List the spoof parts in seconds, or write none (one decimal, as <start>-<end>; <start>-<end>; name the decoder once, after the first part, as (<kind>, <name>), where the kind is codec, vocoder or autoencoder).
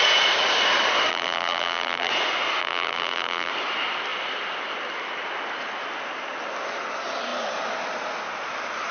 1.1-2.1 (vocoder, BigVGAN v2); 2.6-3.5